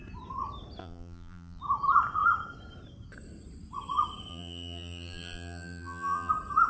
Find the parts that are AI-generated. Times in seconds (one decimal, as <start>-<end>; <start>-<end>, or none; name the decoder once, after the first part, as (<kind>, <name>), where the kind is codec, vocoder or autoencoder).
0.8-1.6 (vocoder, BigVGAN v2); 4.3-6.3